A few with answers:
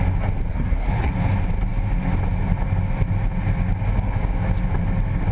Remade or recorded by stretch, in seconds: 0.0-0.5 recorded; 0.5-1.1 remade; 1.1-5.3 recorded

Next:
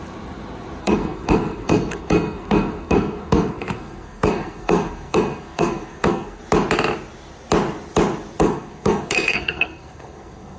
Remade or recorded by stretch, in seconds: 0.0-0.8 recorded; 0.8-6.4 remade; 6.4-8.4 recorded; 8.4-10.6 remade

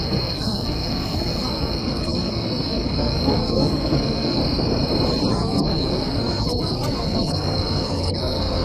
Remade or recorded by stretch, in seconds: 0.0-4.4 remade; 4.4-5.3 recorded; 5.3-8.6 remade

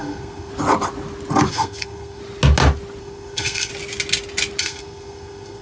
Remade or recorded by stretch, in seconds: 0.0-0.5 remade; 0.5-1.5 recorded; 1.5-2.2 remade; 2.2-3.0 recorded; 3.0-3.7 remade; 3.7-4.6 recorded; 4.6-5.6 remade

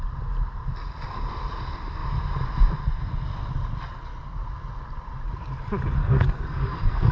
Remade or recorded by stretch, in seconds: 0.0-6.0 recorded; 6.0-7.1 remade

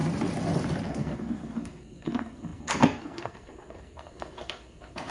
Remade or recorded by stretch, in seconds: 0.0-0.9 recorded; 0.9-5.1 remade

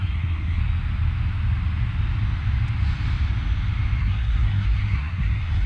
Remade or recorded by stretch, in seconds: 0.0-0.6 remade; 0.6-4.0 recorded; 4.0-5.7 remade

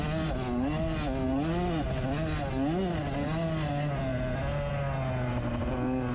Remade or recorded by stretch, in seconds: 0.0-6.1 recorded